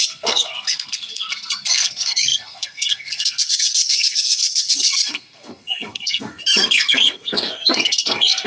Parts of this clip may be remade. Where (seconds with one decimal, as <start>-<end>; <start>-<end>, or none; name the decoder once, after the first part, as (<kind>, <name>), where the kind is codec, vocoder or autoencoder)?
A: 0.0-8.5 (codec, SNAC)

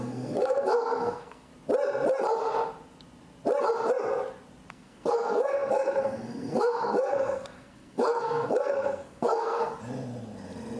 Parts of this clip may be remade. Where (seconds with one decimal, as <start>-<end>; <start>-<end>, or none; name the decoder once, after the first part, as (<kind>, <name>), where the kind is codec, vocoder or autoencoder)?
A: 0.0-1.5 (codec, SNAC); 4.7-9.7

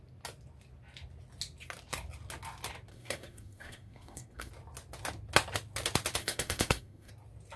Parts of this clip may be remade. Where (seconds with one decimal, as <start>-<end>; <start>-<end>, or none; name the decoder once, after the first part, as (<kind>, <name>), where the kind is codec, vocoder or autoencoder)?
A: 2.9-4.5 (codec, SNAC); 6.2-7.1

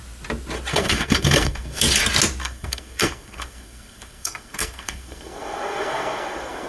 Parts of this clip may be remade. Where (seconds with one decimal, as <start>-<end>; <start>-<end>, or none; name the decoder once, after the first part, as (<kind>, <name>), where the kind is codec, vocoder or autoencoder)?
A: 0.7-1.8 (codec, SNAC); 2.4-6.7